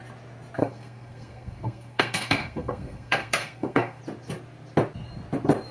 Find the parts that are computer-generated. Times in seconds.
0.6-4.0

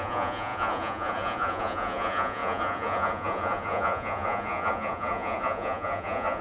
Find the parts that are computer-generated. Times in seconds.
0.0-6.4

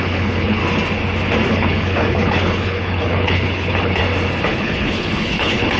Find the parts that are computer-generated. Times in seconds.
0.0-0.6; 1.5-4.0; 4.5-5.8

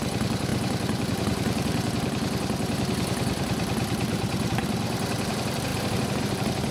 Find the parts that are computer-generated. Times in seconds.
0.0-6.7

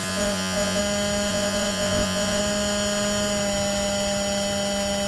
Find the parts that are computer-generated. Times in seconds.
0.0-0.8; 1.3-2.4

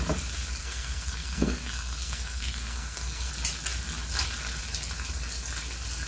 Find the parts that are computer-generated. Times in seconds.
0.6-3.3